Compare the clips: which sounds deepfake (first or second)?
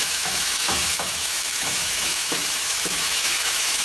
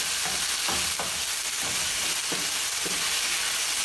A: first